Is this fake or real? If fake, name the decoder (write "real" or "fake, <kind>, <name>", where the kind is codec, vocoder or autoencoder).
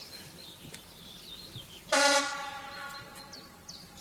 real